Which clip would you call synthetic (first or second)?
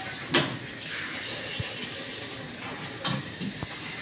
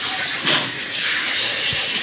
second